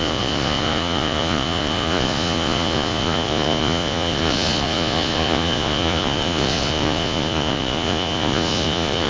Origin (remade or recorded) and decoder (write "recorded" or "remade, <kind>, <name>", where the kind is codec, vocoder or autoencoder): remade, vocoder, Vocos